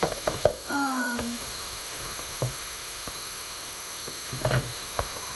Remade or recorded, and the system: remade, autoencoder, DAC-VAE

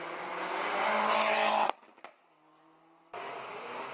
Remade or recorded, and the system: recorded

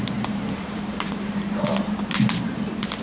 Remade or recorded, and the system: remade, vocoder, BigVGAN v2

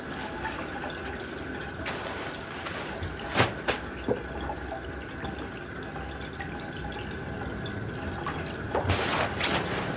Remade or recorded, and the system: recorded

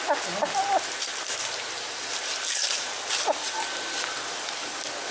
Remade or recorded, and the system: recorded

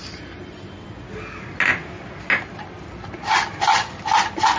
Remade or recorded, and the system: recorded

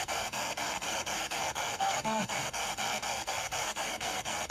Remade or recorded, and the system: remade, codec, SNAC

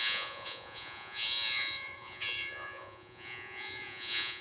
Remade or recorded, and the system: remade, vocoder, Vocos